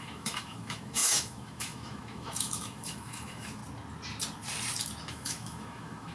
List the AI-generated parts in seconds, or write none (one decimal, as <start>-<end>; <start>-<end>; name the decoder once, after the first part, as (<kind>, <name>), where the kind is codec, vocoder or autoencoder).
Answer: 0.0-3.6 (autoencoder, DAC-VAE); 5.1-6.1

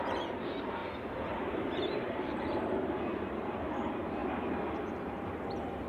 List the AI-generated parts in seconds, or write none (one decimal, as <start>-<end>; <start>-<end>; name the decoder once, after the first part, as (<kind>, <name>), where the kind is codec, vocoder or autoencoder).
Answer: 0.0-0.8 (vocoder, BigVGAN v2); 1.4-4.2; 4.9-5.9